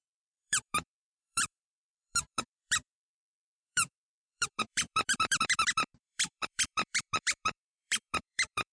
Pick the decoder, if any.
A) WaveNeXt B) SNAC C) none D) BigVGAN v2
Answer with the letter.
D